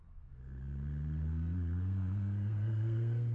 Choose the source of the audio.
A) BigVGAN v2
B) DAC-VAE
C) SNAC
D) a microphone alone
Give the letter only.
C